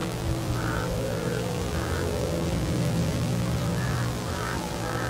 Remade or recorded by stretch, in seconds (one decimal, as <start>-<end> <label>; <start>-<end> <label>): 0.0-5.1 remade